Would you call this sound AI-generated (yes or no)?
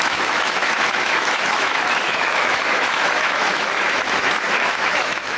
yes